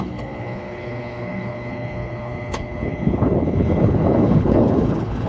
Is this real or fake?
fake